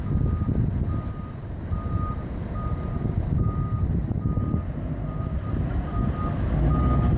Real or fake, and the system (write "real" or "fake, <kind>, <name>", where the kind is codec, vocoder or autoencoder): real